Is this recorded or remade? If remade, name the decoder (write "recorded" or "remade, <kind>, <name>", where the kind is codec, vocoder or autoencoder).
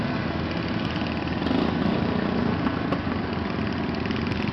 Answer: recorded